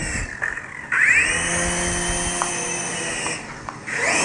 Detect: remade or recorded recorded